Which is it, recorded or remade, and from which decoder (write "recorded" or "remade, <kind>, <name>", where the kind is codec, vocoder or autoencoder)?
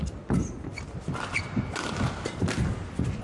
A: recorded